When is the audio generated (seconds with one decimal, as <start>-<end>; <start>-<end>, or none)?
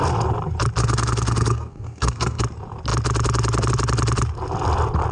0.8-2.4